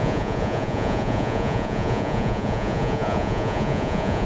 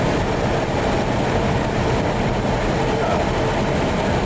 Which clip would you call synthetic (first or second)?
first